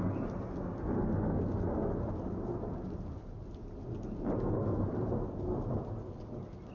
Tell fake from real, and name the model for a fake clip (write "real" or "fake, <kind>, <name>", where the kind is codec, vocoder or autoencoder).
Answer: real